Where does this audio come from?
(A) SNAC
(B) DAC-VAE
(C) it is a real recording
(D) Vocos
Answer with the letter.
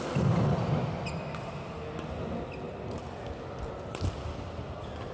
C